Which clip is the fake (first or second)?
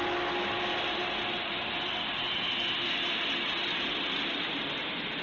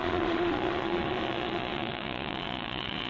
second